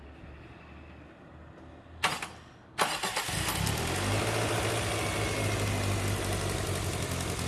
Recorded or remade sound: recorded